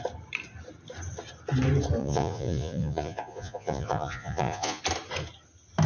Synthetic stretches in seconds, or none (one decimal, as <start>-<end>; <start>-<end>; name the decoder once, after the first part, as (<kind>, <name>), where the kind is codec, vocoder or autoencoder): 2.0-4.8 (vocoder, Vocos)